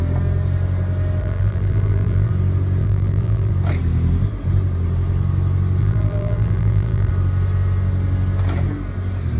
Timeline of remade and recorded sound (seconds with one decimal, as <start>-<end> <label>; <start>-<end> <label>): 0.0-1.2 recorded; 1.2-2.3 remade; 2.3-2.8 recorded; 2.8-3.5 remade; 3.5-5.8 recorded; 5.8-7.1 remade; 7.1-9.4 recorded